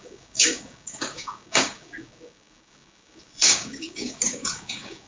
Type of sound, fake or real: fake